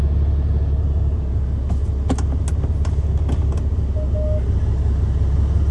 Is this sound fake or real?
real